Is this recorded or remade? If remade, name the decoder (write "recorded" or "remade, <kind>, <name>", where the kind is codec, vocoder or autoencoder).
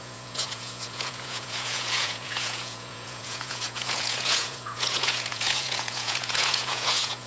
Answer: remade, vocoder, Vocos